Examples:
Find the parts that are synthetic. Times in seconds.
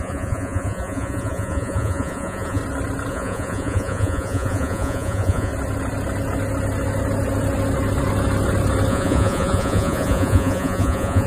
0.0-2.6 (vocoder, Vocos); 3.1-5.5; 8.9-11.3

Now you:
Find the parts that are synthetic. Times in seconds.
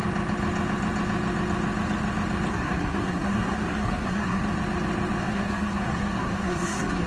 2.5-4.4 (codec, SNAC); 5.2-7.1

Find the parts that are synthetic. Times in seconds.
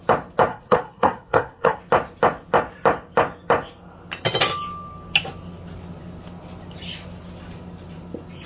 0.5-1.8 (codec, SNAC)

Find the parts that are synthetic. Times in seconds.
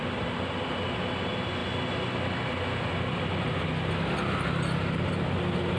none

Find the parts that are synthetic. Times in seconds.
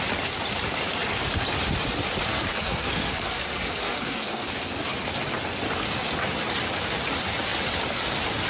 2.3-4.8 (codec, SNAC)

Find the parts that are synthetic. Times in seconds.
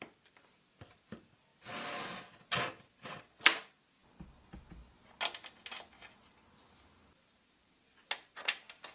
none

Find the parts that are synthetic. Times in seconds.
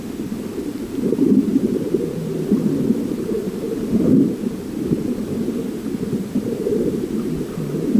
1.5-2.7 (vocoder, BigVGAN v2)